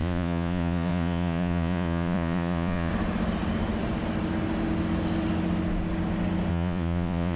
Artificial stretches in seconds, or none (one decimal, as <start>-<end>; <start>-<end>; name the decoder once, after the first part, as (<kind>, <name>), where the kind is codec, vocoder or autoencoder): 0.0-2.9 (vocoder, Vocos); 6.5-7.4